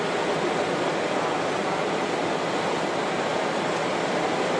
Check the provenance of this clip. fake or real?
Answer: real